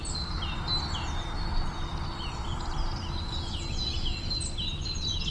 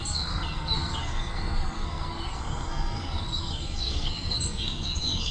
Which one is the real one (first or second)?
first